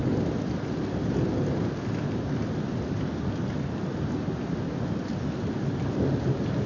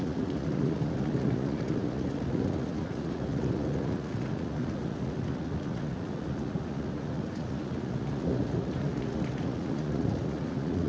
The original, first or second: first